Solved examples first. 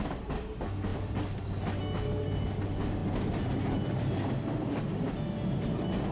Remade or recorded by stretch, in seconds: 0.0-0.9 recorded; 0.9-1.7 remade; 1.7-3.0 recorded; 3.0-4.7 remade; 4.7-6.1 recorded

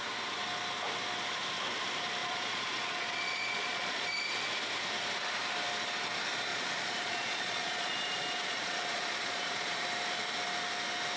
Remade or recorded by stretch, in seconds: 0.0-2.2 recorded; 2.2-4.0 remade; 4.0-6.5 recorded; 6.5-9.8 remade; 9.8-11.2 recorded

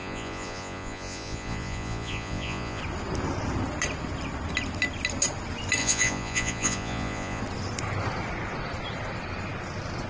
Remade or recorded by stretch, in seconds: 0.0-2.8 remade; 2.8-5.8 recorded; 5.8-7.4 remade; 7.4-10.1 recorded

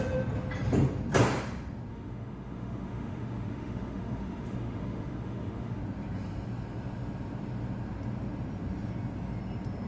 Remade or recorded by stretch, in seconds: 0.0-1.9 recorded; 1.9-5.8 remade; 5.8-9.9 recorded